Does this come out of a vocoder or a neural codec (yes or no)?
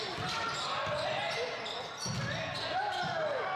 no